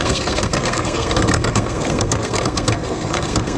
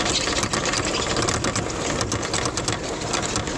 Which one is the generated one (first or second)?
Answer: first